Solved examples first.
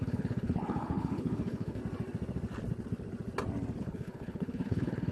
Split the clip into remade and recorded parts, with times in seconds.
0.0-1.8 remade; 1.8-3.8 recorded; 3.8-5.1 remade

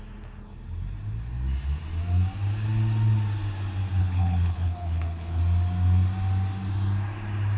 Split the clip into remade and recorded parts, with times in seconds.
0.0-4.0 recorded; 4.0-5.4 remade; 5.4-7.6 recorded

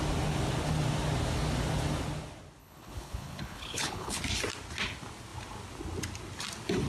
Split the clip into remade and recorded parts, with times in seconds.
0.0-2.6 recorded; 2.6-4.2 remade; 4.2-6.9 recorded

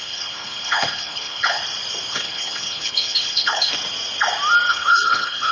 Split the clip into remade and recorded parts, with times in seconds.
0.0-1.6 remade; 1.6-2.1 recorded; 2.1-3.7 remade; 3.7-4.7 recorded; 4.7-5.5 remade